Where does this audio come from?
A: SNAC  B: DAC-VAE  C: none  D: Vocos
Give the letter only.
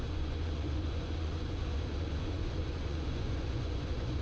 D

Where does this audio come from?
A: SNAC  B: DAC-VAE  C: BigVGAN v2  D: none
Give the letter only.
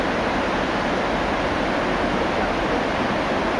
D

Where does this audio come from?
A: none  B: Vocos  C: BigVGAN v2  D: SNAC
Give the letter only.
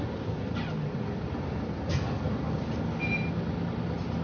A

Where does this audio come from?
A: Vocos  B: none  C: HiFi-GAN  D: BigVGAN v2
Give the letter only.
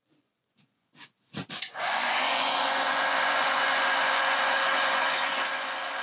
A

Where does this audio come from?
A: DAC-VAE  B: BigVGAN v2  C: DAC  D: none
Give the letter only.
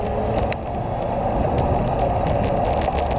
D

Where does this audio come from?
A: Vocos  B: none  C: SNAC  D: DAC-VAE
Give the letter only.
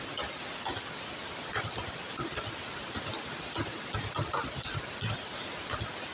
B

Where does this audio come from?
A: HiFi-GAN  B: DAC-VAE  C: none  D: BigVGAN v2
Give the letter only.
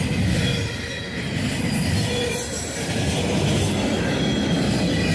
C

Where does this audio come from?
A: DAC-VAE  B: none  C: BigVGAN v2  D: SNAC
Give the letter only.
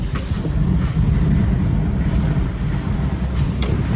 B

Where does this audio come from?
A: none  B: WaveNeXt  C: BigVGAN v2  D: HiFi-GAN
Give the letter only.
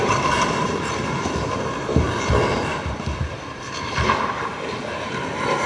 C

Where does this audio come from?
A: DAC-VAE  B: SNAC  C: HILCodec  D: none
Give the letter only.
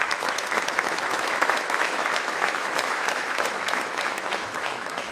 A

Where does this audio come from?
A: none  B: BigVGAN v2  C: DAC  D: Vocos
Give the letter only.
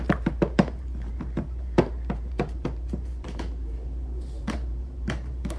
B